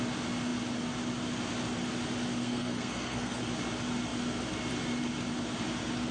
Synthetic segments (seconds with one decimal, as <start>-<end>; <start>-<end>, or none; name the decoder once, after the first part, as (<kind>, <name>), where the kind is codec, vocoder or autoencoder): 2.4-3.4 (codec, SNAC)

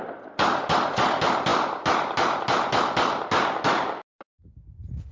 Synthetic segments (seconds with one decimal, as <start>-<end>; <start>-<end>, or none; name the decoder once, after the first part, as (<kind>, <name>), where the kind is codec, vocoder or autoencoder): none

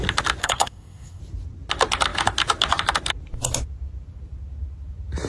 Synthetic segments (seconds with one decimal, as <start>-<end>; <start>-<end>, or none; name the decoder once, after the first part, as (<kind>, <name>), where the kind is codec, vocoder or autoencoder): 0.4-1.2 (codec, SNAC)

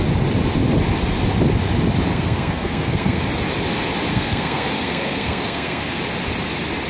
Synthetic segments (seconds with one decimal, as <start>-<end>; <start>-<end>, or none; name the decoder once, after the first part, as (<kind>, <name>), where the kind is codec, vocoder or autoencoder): 2.1-3.2 (codec, SNAC); 4.1-6.0

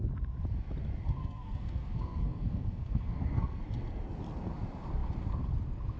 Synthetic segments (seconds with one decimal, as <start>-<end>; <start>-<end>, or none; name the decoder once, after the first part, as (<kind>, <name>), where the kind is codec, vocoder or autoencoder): 1.2-3.6 (codec, SNAC)